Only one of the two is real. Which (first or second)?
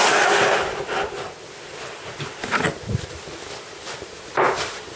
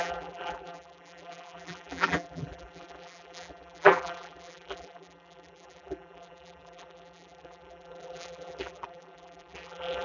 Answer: first